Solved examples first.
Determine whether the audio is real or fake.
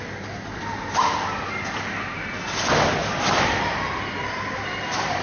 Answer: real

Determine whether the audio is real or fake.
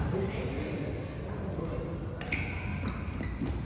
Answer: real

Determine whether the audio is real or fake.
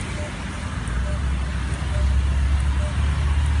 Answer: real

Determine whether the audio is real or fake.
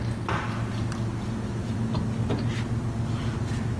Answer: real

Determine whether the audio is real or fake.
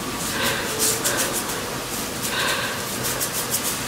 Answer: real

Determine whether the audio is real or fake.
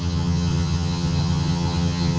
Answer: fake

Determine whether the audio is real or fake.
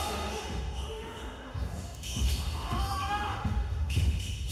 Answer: fake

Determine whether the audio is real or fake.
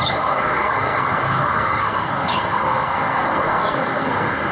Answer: fake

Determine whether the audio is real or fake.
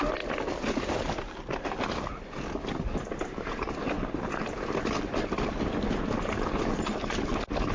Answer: real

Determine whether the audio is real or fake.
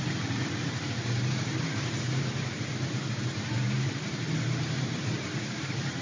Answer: fake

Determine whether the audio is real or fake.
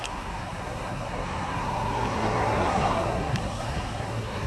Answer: fake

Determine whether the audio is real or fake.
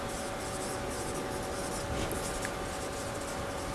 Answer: real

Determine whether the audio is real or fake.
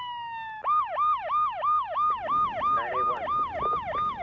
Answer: real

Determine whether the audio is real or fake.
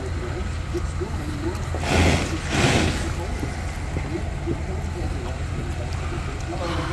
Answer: real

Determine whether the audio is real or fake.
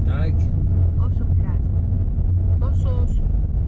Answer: real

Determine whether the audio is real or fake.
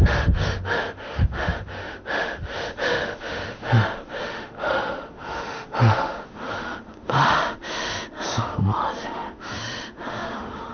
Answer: fake